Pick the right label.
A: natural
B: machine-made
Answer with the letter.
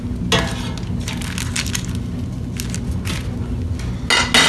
A